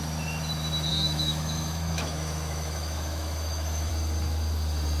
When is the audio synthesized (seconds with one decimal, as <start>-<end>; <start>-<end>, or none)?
0.9-3.9